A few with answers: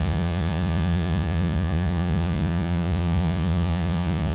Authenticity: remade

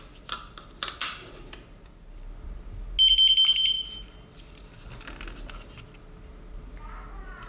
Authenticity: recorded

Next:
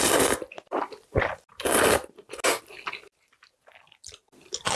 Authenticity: recorded